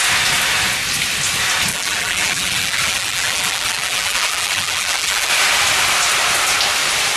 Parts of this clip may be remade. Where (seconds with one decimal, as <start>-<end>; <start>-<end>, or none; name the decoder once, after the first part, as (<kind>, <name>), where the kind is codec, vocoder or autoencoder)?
1.7-5.3 (vocoder, BigVGAN v2)